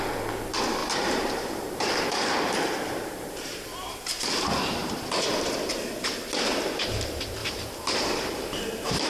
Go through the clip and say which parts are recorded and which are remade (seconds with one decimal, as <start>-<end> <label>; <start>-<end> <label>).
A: 0.0-0.8 recorded; 0.8-4.2 remade; 4.2-4.8 recorded; 4.8-5.5 remade; 5.5-7.4 recorded; 7.4-9.1 remade